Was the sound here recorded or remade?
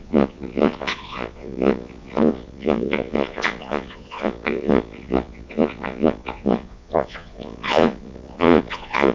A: remade